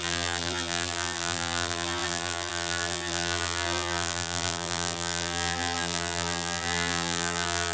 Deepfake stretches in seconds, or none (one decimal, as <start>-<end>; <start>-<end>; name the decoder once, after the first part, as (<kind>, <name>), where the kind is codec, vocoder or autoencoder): 0.0-7.7 (vocoder, BigVGAN v2)